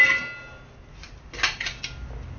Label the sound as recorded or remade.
recorded